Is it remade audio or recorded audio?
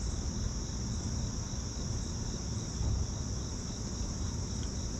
recorded